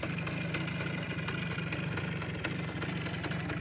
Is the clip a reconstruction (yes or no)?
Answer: no